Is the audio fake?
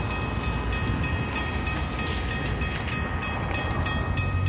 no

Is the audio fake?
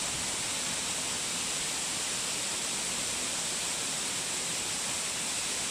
no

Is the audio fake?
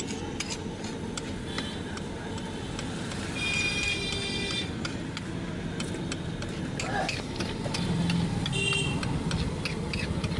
no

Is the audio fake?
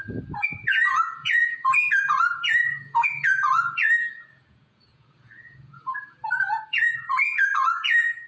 yes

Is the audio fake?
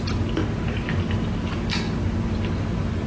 no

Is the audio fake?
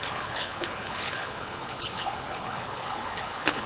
yes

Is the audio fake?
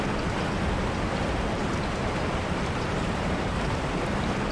no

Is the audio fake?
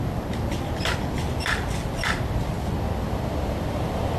no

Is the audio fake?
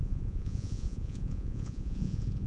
yes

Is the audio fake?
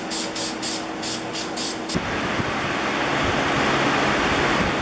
no